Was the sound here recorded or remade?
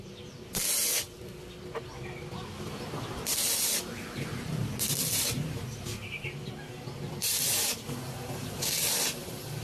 recorded